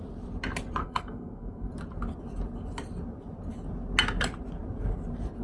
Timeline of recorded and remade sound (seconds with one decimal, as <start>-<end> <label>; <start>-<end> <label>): 0.0-0.8 recorded; 0.8-1.7 remade; 1.7-5.4 recorded